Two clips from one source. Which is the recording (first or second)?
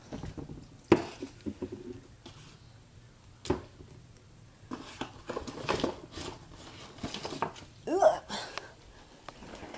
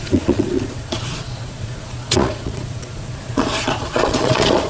first